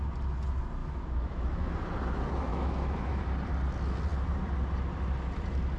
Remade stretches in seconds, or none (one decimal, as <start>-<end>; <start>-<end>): 0.8-1.7; 2.5-3.2